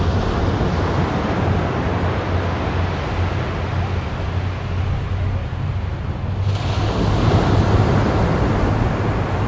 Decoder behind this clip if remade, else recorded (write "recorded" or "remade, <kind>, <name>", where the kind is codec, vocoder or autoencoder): recorded